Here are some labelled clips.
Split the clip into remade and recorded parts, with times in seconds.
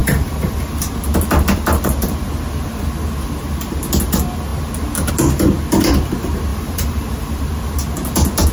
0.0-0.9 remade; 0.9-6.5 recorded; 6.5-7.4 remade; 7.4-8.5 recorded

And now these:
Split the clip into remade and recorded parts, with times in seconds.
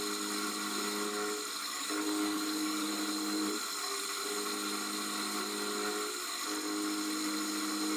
0.0-1.6 recorded; 1.6-2.9 remade; 2.9-8.0 recorded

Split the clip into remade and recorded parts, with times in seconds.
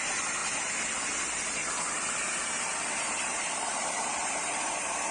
0.0-3.3 recorded; 3.3-5.1 remade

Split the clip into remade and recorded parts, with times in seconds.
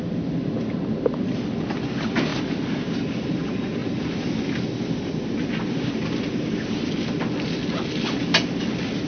0.0-9.1 recorded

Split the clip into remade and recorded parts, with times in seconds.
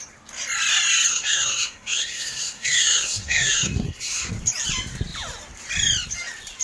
0.0-1.1 recorded; 1.1-4.3 remade; 4.3-6.6 recorded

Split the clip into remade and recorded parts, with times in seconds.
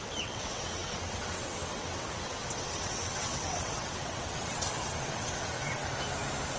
0.0-5.8 remade; 5.8-6.6 recorded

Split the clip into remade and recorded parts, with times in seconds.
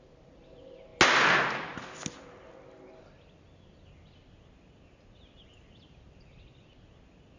0.0-7.4 recorded